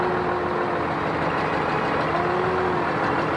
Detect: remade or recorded recorded